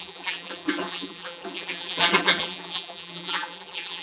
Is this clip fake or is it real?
fake